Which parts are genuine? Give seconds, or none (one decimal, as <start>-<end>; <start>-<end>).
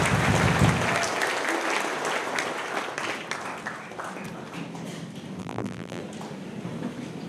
0.0-5.4; 6.0-7.3